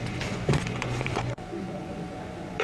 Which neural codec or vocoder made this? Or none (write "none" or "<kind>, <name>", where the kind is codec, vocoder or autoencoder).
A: vocoder, Vocos